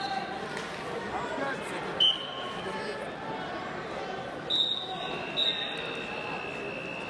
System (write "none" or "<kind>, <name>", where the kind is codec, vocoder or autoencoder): none